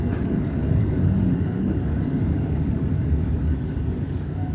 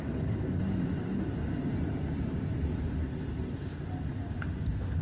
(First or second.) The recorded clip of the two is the second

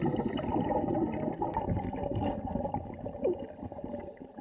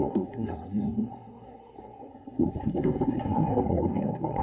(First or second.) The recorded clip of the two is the first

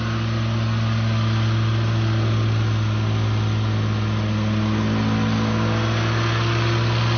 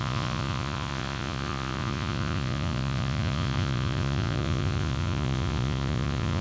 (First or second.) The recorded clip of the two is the first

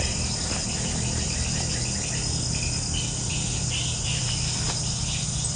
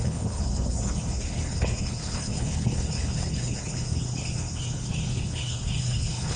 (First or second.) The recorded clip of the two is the first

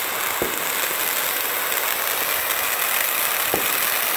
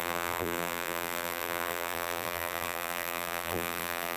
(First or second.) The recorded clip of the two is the first